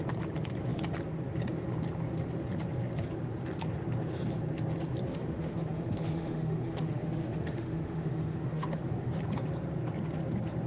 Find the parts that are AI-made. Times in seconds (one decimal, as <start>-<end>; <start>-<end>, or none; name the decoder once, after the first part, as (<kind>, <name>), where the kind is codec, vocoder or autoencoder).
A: 5.1-9.1 (autoencoder, DAC-VAE)